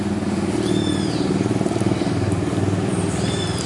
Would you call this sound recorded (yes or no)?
yes